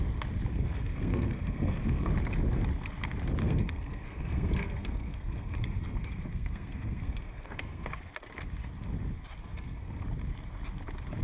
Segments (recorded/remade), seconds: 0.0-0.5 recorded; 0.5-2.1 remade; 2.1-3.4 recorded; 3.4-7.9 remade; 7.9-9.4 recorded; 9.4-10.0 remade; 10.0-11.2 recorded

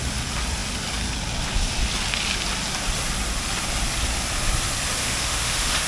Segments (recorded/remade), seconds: 0.0-5.0 recorded; 5.0-5.9 remade